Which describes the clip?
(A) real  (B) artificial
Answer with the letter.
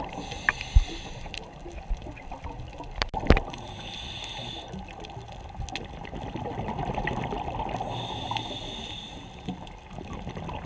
A